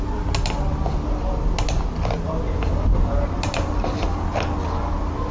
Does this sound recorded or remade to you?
recorded